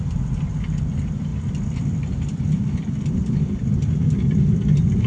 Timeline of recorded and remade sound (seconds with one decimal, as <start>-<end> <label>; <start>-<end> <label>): 0.0-5.1 recorded